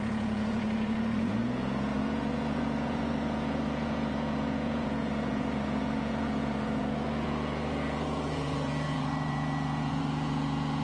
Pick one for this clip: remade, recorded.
remade